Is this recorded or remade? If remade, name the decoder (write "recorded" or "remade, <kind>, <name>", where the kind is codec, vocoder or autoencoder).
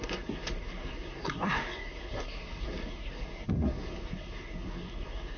remade, codec, SNAC